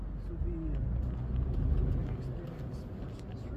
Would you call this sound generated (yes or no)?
no